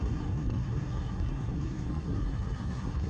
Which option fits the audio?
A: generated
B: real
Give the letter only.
A